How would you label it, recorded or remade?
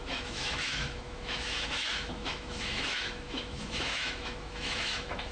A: remade